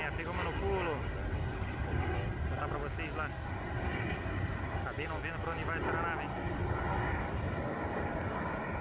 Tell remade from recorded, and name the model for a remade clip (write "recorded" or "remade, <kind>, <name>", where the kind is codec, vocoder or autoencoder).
recorded